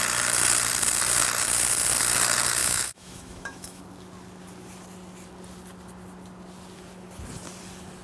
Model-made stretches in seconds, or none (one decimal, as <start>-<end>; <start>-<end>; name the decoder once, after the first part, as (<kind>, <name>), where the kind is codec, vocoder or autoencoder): 2.6-3.8 (autoencoder, DAC-VAE)